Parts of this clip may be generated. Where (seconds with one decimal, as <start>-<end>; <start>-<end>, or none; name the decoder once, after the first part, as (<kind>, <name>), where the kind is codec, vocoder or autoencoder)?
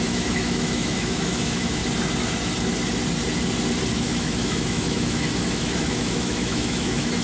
0.0-1.8 (autoencoder, DAC-VAE); 3.9-7.2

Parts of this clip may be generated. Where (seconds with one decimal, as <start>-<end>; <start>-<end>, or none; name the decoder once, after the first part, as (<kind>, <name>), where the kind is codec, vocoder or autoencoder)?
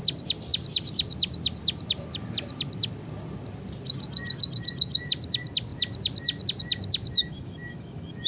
7.2-8.3 (autoencoder, DAC-VAE)